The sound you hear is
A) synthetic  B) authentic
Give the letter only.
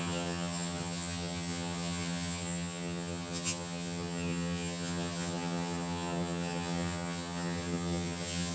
A